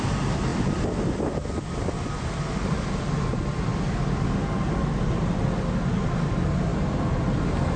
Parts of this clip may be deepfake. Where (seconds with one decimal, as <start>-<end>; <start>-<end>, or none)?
none